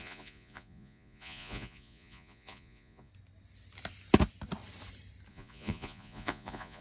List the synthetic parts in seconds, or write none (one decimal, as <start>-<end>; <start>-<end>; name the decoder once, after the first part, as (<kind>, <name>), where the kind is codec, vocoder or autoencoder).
0.0-3.1 (vocoder, Vocos); 5.3-6.8